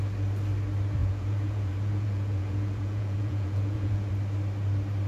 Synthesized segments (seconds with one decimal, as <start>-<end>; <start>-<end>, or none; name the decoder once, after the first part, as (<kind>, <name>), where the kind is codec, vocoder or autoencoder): 1.0-4.1 (vocoder, Vocos)